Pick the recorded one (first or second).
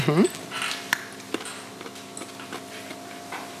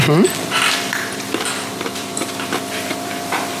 first